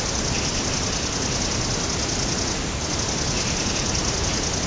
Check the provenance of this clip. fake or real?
real